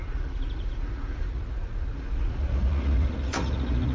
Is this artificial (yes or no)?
yes